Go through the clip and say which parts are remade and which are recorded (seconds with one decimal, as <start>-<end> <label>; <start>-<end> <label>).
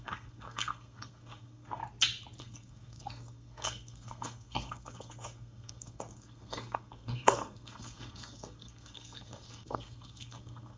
0.0-1.8 remade; 1.8-2.4 recorded; 2.4-10.8 remade